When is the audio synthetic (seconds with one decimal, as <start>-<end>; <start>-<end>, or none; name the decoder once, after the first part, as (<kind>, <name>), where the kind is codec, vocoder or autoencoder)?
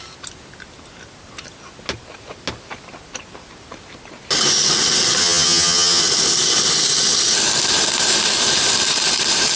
5.2-6.0 (vocoder, HiFi-GAN)